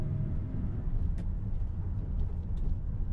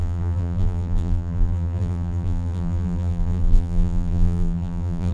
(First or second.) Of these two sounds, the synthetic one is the second